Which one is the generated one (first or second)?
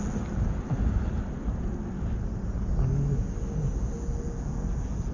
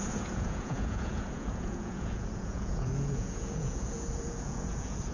second